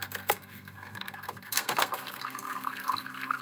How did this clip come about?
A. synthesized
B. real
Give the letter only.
A